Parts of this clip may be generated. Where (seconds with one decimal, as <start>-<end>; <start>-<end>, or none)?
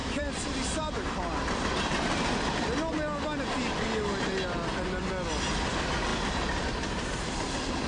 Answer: 0.0-2.0